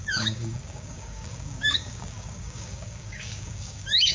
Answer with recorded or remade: remade